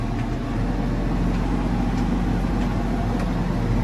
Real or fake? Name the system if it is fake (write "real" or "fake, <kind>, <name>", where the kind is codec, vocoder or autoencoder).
real